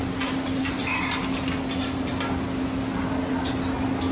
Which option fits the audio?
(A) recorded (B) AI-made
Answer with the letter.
A